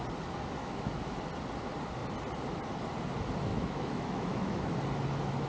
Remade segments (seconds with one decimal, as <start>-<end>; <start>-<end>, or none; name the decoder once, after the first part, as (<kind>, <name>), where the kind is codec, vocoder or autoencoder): 0.6-1.2 (autoencoder, DAC-VAE); 3.5-4.7